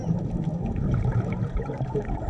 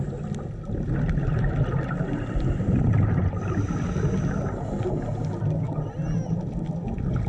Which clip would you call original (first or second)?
second